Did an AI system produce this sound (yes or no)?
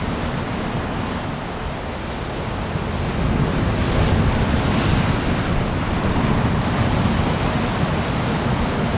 no